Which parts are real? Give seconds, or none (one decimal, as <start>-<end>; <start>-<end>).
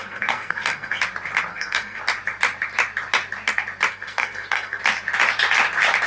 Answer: 1.0-1.5; 2.0-3.9; 4.8-6.1